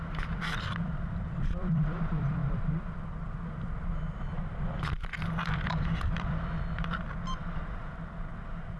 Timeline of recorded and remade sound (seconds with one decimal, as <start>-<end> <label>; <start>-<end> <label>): 0.0-8.8 remade